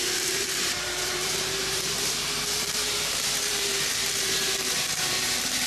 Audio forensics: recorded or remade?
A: remade